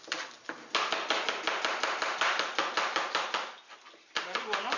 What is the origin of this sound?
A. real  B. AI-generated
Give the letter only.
A